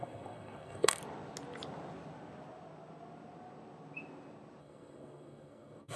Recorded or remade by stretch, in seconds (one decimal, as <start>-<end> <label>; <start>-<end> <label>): 0.0-1.0 remade; 1.0-4.6 recorded; 4.6-6.0 remade